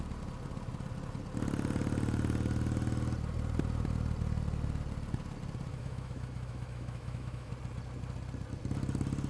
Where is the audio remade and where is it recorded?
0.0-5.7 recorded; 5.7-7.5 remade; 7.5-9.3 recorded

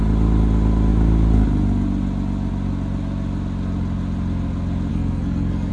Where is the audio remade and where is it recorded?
0.0-4.9 recorded; 4.9-5.7 remade

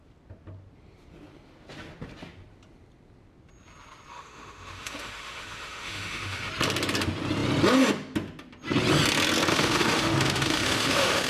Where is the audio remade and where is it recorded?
0.0-4.1 recorded; 4.1-6.5 remade; 6.5-9.5 recorded; 9.5-11.3 remade

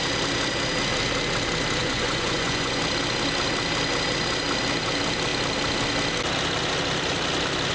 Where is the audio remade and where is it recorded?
0.0-1.8 recorded; 1.8-2.8 remade; 2.8-7.7 recorded

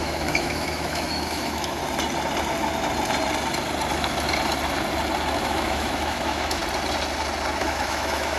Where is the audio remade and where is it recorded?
0.0-1.8 remade; 1.8-5.4 recorded; 5.4-6.6 remade; 6.6-7.6 recorded; 7.6-8.4 remade

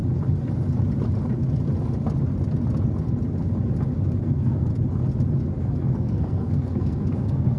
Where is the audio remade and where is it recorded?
0.0-4.2 recorded; 4.2-4.7 remade; 4.7-5.6 recorded; 5.6-7.6 remade

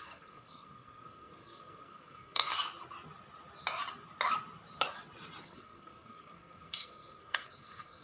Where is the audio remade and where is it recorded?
0.0-2.5 remade; 2.5-5.4 recorded; 5.4-8.0 remade

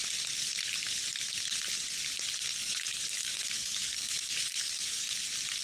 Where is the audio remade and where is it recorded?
0.0-2.6 recorded; 2.6-5.1 remade; 5.1-5.6 recorded